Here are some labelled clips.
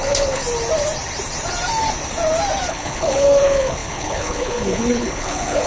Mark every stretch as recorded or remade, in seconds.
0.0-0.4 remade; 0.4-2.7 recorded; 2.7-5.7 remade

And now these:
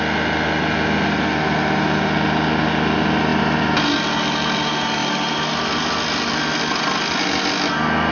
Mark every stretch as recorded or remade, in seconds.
0.0-8.1 recorded